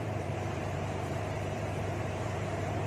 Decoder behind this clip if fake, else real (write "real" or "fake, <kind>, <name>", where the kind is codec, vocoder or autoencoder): fake, vocoder, BigVGAN v2